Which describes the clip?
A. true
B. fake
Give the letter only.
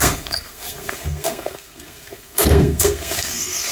B